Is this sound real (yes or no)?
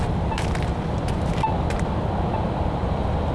yes